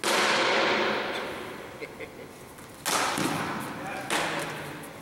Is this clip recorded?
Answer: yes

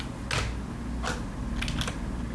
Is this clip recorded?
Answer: yes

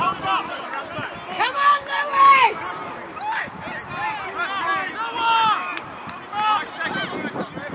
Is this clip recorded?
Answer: yes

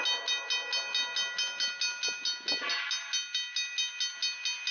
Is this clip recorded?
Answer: yes